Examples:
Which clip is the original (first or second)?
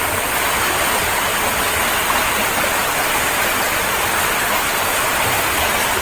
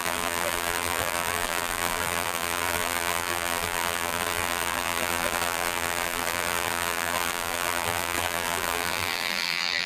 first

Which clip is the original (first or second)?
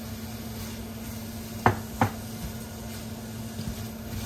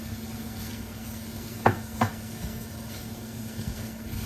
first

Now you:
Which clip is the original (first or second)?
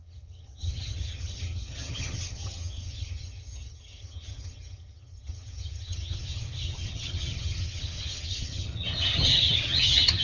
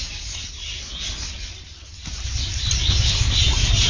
second